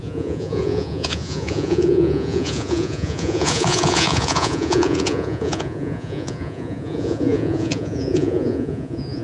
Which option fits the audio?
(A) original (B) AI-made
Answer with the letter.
B